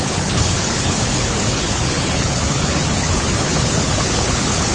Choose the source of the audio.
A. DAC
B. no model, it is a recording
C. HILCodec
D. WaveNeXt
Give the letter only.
C